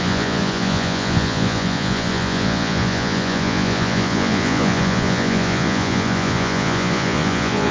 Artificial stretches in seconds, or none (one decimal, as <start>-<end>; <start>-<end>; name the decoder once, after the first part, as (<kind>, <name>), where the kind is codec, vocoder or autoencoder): 0.0-7.7 (vocoder, Vocos)